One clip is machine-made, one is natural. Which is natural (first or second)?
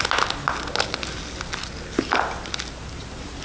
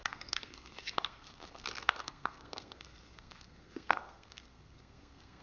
first